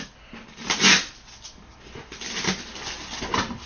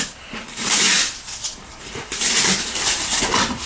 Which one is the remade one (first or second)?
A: second